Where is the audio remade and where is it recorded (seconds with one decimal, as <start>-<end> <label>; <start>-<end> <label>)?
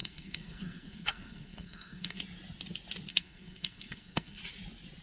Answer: 0.0-2.2 remade; 2.2-3.1 recorded; 3.1-4.4 remade; 4.4-5.0 recorded